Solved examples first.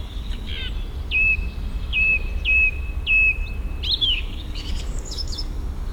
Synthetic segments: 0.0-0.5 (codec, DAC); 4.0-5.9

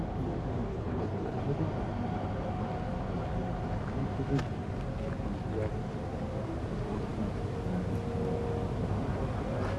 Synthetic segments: 0.7-1.4 (codec, HILCodec)

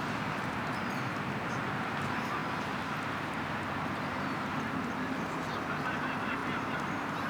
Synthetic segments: 0.0-7.3 (vocoder, BigVGAN v2)

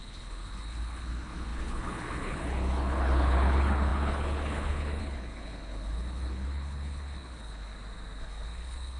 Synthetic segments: 0.0-7.7 (codec, HILCodec); 8.2-9.0

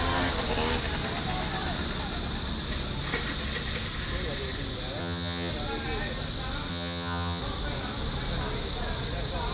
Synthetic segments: 5.0-5.5 (vocoder, HiFi-GAN); 6.7-7.4

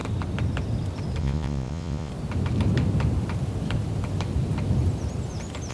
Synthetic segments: 1.2-2.1 (vocoder, Vocos)

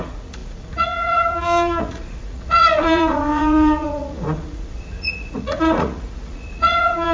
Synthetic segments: 0.0-7.1 (vocoder, Vocos)

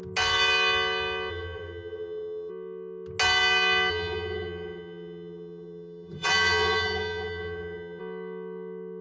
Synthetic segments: 1.3-2.5 (vocoder, HiFi-GAN); 3.9-8.0